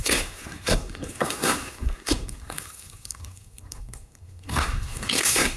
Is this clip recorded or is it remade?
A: remade